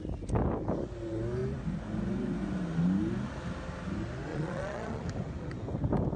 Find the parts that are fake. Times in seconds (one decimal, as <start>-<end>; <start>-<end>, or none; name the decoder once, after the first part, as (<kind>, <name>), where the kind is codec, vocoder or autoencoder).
4.3-5.0 (vocoder, Vocos)